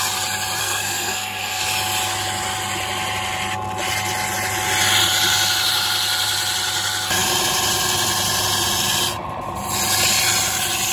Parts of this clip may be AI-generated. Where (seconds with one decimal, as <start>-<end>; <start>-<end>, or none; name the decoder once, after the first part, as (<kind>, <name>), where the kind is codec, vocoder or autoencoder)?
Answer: 0.6-1.6 (codec, SNAC)